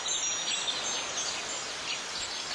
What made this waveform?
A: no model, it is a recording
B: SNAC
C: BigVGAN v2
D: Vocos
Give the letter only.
A